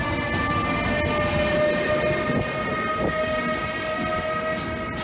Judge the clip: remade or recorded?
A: recorded